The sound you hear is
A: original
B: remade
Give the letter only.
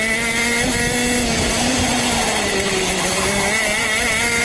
A